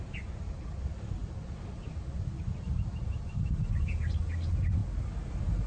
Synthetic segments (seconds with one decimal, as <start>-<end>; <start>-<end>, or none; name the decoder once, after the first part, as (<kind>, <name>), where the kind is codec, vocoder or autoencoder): none